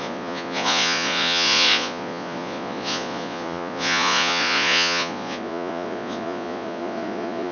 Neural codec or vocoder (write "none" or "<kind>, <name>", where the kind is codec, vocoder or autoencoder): vocoder, Vocos